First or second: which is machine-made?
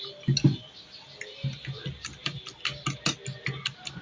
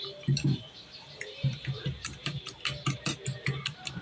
second